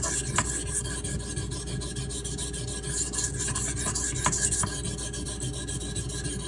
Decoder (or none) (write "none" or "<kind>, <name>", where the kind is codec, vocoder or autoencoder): none